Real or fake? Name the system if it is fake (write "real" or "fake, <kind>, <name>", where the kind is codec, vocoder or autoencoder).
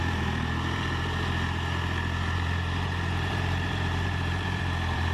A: fake, vocoder, BigVGAN v2